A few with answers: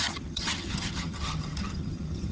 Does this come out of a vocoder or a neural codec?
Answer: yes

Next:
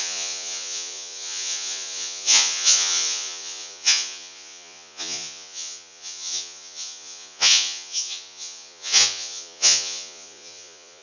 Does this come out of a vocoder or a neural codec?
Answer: yes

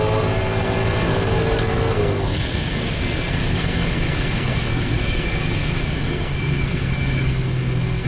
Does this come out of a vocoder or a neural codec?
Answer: yes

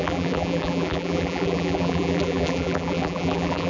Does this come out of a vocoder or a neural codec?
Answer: yes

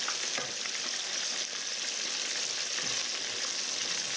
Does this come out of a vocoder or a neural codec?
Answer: no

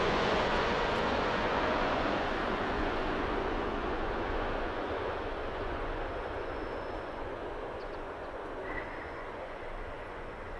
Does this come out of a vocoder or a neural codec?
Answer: yes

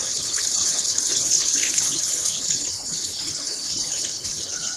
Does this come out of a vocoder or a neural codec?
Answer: yes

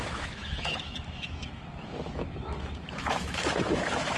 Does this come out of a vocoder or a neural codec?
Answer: yes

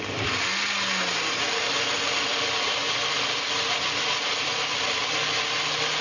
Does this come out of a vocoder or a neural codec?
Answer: no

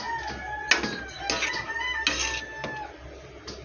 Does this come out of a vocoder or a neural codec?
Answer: no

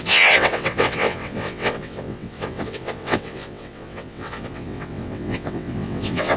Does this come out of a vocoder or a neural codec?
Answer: yes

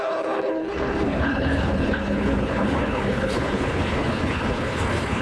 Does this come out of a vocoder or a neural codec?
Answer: yes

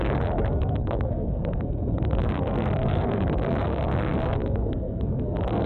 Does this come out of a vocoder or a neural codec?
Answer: yes